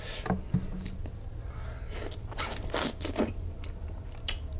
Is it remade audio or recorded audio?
recorded